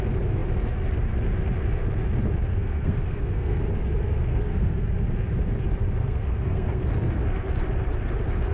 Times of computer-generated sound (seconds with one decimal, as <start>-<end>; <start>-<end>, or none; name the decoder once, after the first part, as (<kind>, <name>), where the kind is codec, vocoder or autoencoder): 2.5-3.6 (codec, SNAC); 4.3-4.9; 6.0-6.9